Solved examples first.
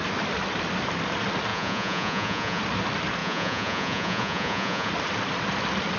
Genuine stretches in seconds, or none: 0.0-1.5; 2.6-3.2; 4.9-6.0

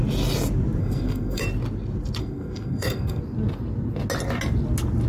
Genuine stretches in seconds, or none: 0.0-0.8; 1.4-2.2; 3.2-5.1

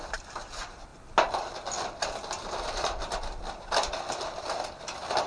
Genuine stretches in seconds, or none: 0.0-5.3

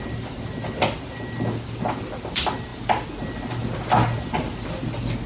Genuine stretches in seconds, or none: 0.0-5.3

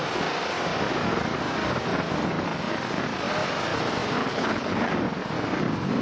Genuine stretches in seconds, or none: 0.0-4.2; 4.9-6.0

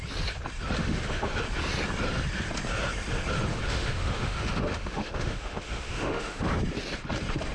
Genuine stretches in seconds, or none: 0.0-0.8; 1.4-3.5; 6.5-7.5

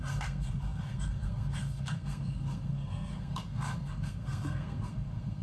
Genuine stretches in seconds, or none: none

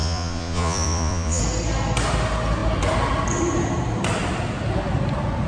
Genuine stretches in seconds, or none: 1.4-5.5